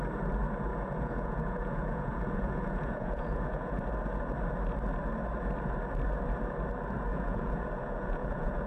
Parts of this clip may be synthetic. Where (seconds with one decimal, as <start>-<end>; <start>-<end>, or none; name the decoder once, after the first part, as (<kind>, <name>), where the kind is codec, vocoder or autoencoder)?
0.7-3.8 (vocoder, Vocos); 7.1-8.7